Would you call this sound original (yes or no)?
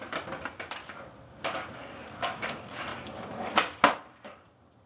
yes